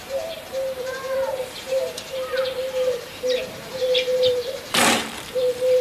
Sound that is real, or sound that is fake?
fake